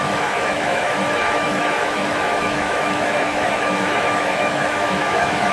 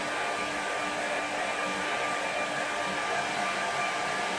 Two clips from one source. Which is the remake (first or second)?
first